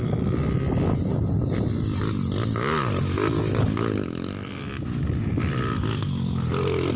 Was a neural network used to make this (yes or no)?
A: no